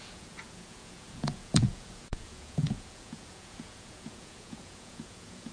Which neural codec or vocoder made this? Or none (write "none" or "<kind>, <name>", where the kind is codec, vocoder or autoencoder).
vocoder, Vocos